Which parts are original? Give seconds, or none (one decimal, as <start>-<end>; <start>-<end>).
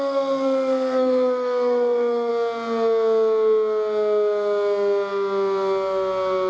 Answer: 2.3-6.5